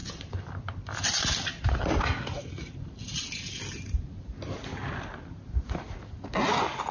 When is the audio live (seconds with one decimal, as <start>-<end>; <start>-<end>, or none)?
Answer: 0.0-6.9